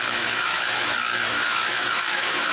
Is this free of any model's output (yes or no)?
no